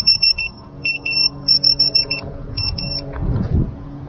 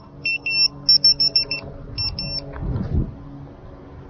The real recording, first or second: second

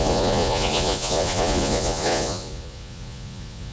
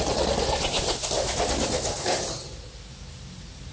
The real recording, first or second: second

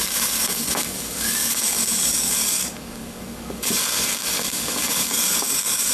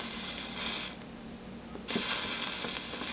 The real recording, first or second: second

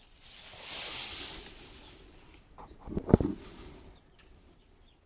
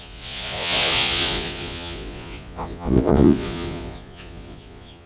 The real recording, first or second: first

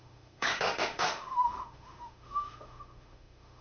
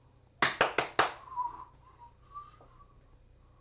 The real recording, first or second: second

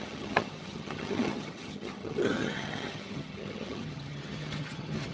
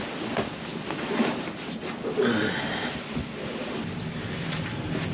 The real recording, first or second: second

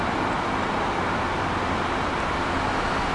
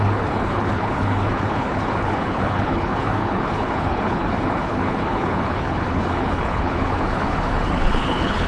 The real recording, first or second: first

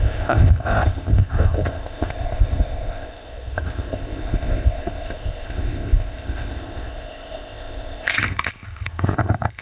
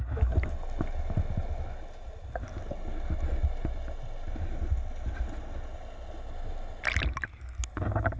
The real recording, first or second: second